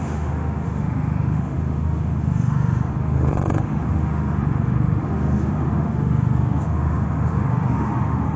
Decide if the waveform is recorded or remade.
remade